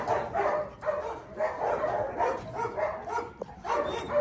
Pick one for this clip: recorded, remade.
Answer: recorded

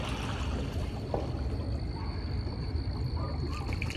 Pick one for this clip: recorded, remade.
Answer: recorded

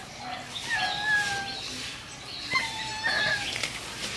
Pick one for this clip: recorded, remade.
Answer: recorded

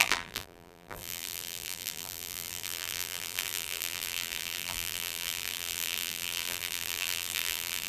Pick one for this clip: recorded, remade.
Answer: remade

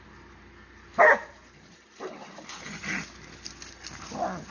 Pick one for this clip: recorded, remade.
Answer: recorded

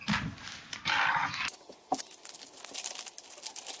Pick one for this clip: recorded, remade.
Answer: recorded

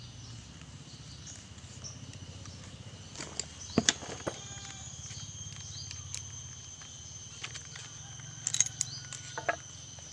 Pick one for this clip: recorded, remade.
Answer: recorded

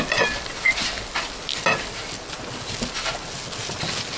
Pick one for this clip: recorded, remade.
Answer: recorded